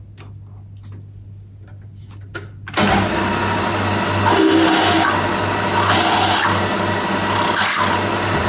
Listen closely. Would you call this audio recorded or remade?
recorded